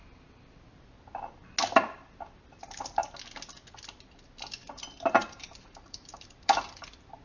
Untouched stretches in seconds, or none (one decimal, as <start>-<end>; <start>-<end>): 0.0-2.5; 3.0-5.1